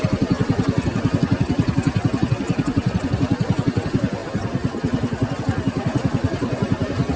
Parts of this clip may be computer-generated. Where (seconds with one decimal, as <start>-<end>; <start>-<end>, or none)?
none